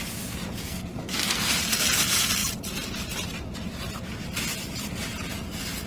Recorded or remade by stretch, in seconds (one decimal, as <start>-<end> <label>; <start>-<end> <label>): 0.0-0.6 recorded; 0.6-1.6 remade; 1.6-5.9 recorded